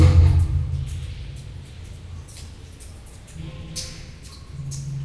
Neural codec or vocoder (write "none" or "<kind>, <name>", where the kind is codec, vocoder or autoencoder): none